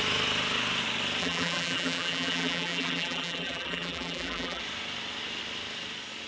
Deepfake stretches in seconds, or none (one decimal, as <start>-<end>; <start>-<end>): 1.2-4.6